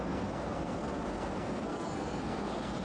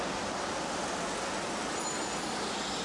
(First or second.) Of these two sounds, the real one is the second